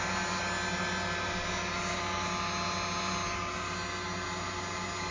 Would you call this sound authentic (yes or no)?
yes